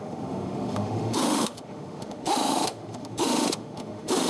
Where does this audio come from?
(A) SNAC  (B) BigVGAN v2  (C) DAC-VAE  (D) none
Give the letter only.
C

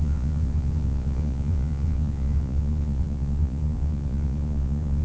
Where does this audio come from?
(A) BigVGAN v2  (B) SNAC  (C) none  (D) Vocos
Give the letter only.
D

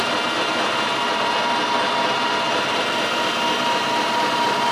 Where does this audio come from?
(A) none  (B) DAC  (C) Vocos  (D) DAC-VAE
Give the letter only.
A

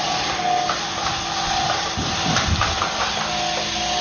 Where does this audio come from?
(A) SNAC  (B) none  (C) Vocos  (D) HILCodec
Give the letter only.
B